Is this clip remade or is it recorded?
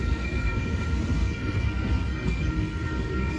remade